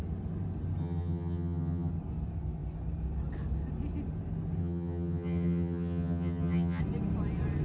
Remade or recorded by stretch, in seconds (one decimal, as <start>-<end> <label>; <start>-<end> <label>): 0.0-0.8 recorded; 0.8-1.9 remade; 1.9-4.6 recorded; 4.6-6.8 remade; 6.8-7.6 recorded

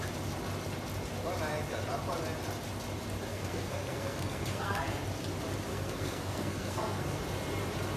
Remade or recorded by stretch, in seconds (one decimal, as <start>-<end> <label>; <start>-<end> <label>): 0.0-3.3 recorded; 3.3-5.0 remade; 5.0-5.7 recorded; 5.7-7.2 remade; 7.2-8.0 recorded

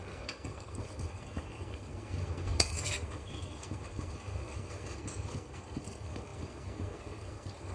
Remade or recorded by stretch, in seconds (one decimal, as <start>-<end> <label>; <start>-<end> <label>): 0.0-7.7 remade

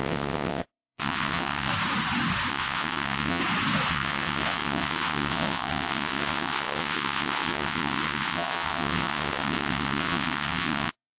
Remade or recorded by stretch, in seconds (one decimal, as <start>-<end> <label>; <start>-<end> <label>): 0.0-1.7 remade; 1.7-2.5 recorded; 2.5-3.4 remade; 3.4-3.9 recorded; 3.9-11.2 remade